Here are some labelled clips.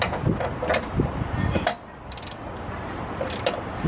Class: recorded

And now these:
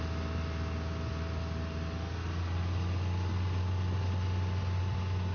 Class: recorded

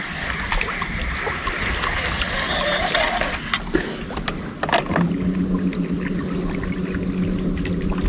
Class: recorded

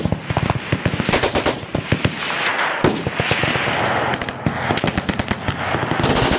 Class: recorded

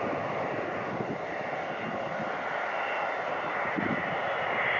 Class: recorded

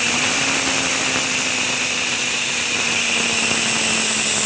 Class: recorded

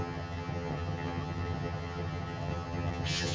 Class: remade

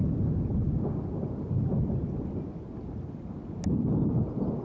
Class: recorded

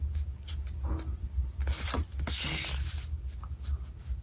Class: recorded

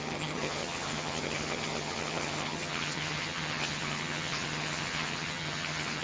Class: remade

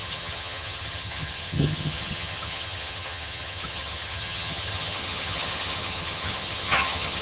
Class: remade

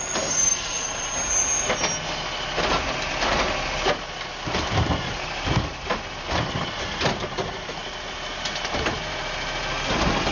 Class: recorded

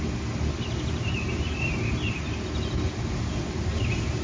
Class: recorded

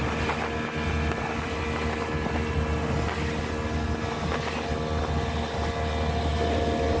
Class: recorded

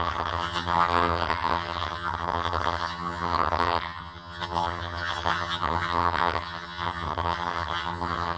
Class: remade